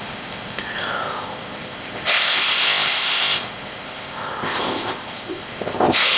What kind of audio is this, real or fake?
fake